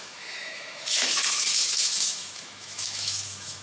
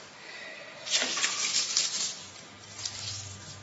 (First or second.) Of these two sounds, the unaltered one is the second